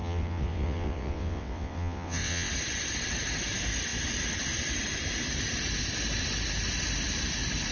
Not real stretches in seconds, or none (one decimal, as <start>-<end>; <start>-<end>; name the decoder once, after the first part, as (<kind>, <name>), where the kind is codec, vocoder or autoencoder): 0.0-2.5 (vocoder, WaveNeXt)